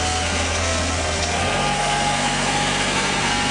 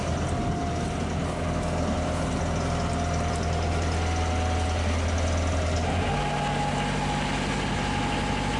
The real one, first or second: second